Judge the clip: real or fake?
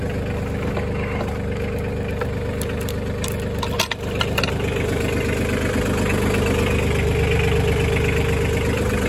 real